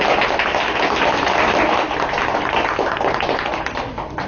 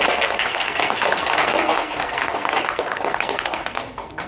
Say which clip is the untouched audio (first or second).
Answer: first